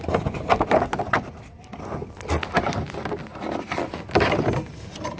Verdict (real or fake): real